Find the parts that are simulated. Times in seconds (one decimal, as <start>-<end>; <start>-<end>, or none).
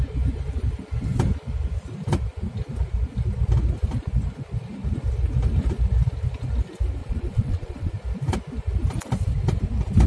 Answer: 7.0-7.9